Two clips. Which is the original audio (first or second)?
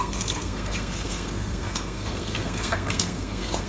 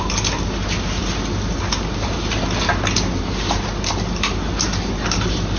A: second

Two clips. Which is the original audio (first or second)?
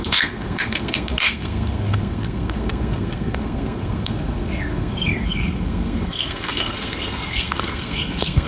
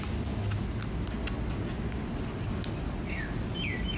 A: second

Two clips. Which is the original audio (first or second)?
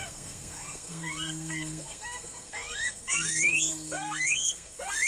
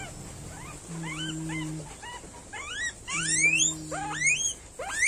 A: second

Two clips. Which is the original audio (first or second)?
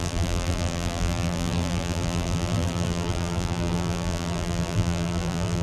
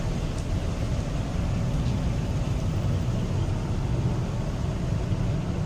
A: second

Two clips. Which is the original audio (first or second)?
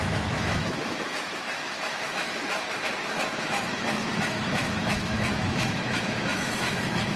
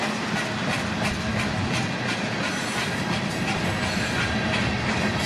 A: second